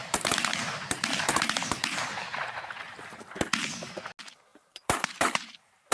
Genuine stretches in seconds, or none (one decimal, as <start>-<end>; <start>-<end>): 3.4-4.5